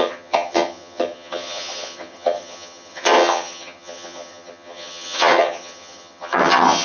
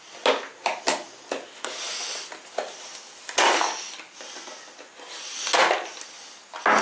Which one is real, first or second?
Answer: second